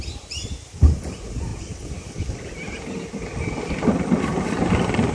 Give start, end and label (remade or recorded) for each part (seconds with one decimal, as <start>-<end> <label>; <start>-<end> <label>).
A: 0.0-5.1 recorded